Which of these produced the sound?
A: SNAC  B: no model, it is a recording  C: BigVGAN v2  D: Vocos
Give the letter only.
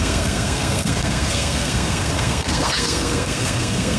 A